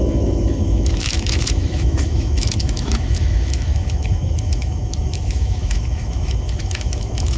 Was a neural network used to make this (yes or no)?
yes